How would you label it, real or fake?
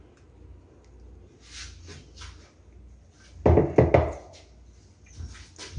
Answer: real